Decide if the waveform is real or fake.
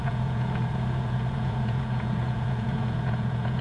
fake